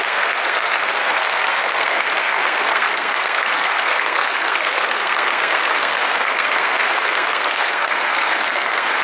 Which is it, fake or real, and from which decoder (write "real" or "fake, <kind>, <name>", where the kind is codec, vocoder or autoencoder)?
fake, codec, SNAC